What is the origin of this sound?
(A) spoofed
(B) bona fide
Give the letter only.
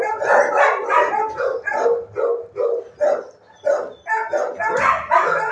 B